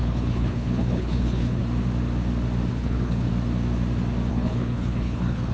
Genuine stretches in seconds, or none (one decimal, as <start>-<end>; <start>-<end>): 1.6-2.7; 3.3-4.3